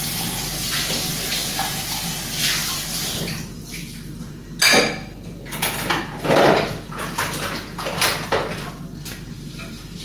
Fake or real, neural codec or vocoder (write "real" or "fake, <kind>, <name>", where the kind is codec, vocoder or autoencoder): real